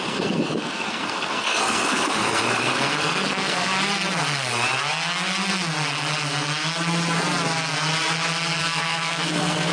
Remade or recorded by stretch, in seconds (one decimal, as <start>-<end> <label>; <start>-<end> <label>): 0.0-3.7 remade; 3.7-8.6 recorded; 8.6-9.7 remade